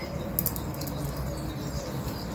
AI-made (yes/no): no